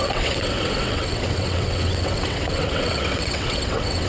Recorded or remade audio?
remade